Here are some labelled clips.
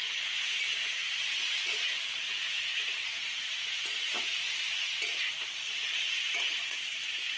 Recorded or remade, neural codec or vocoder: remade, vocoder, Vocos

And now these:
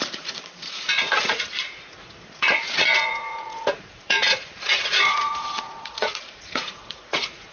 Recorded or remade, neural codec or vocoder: remade, vocoder, Vocos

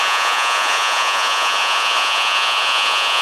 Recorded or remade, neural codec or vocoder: remade, vocoder, Vocos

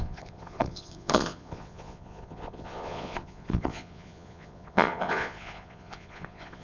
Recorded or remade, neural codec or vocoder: remade, vocoder, Vocos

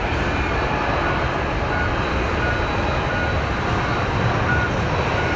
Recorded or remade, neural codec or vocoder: recorded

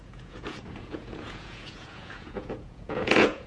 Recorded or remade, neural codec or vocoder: remade, vocoder, Vocos